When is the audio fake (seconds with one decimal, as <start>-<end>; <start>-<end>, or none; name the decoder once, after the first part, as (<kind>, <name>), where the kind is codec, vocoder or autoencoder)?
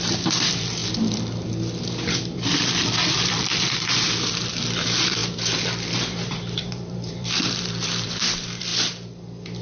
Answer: 0.0-0.8 (vocoder, BigVGAN v2); 2.2-8.7